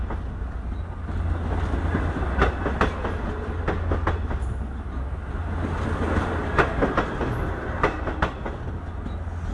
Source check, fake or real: real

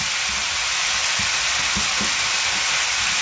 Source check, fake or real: real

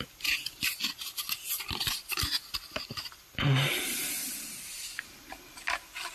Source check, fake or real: real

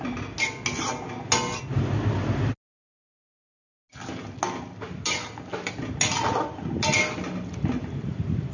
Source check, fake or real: real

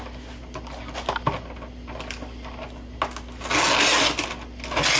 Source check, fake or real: real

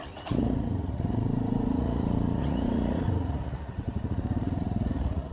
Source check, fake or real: fake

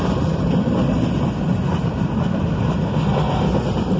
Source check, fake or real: real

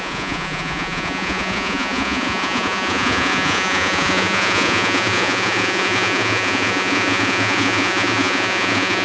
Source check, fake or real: fake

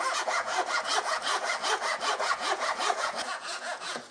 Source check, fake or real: fake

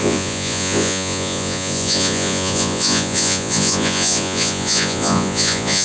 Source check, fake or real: fake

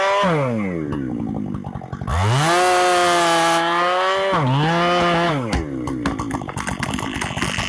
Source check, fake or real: real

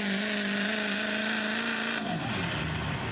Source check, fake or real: real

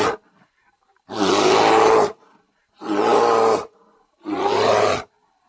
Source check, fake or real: real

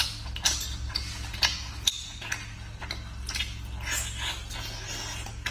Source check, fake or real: real